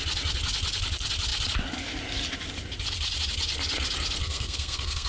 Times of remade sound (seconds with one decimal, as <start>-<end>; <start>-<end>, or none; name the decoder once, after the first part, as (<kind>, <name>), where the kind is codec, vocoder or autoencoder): 4.2-5.1 (codec, SNAC)